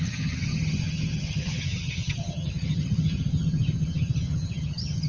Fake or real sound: fake